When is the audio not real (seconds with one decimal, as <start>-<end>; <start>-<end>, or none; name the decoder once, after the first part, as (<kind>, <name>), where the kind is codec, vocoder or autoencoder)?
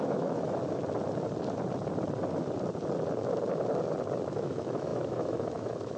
0.0-0.8 (autoencoder, DAC-VAE); 4.4-6.0